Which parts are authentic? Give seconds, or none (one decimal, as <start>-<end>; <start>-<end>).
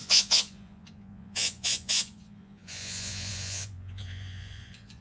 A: none